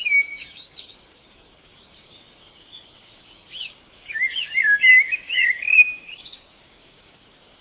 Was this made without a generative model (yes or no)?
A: no